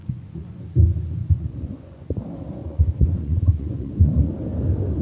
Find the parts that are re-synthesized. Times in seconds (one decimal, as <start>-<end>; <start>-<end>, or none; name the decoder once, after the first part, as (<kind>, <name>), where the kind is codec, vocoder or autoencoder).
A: 0.0-0.6 (vocoder, Vocos); 1.2-2.2; 2.6-4.3